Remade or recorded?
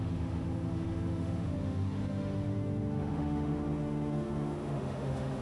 remade